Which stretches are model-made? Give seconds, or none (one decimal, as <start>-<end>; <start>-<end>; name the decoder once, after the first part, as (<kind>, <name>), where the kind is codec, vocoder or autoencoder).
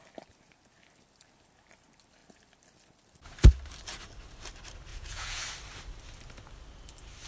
4.9-5.4 (vocoder, Vocos)